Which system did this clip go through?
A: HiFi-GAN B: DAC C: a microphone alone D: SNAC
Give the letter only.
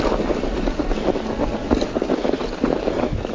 C